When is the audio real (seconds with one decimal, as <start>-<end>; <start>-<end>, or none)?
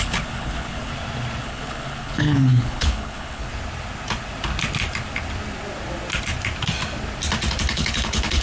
0.9-1.4; 3.5-7.7